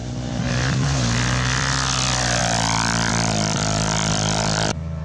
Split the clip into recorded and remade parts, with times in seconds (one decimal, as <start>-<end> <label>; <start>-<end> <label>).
0.0-5.0 remade